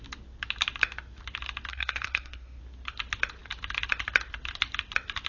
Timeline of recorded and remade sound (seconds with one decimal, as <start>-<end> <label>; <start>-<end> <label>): 0.0-1.7 recorded; 1.7-2.6 remade; 2.6-5.3 recorded